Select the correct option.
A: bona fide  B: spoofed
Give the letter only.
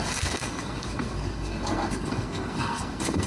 B